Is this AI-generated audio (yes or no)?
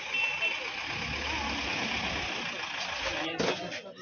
no